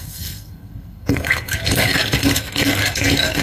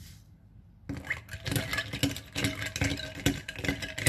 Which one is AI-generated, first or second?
first